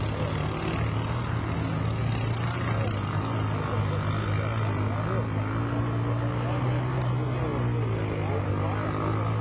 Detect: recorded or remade recorded